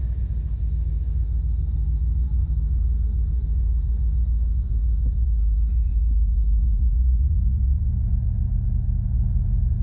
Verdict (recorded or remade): recorded